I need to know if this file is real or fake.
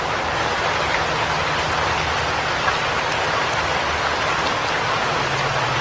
real